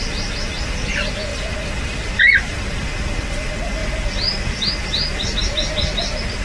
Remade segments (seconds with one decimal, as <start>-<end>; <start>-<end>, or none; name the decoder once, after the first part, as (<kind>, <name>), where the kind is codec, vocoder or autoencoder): 3.8-4.7 (vocoder, BigVGAN v2); 5.4-6.4